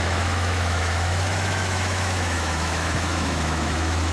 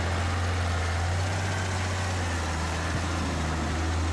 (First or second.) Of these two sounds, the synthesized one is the first